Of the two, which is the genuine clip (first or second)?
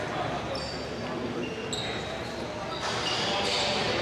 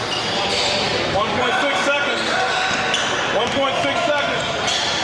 first